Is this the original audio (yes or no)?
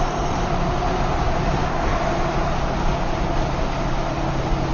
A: yes